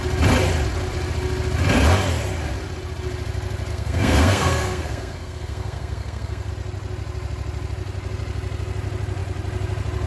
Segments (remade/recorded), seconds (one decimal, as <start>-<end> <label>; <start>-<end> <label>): 0.0-3.7 recorded; 3.7-6.5 remade; 6.5-10.1 recorded